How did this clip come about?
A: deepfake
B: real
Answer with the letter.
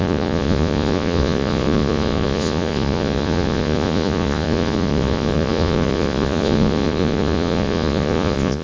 A